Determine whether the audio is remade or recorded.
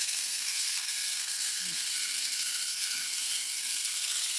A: remade